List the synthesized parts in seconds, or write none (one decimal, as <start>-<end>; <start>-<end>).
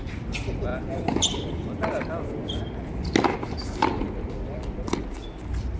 none